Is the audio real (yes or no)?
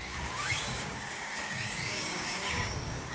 no